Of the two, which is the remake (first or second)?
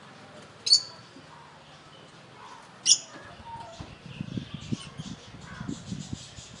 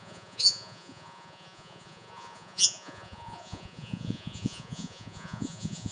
second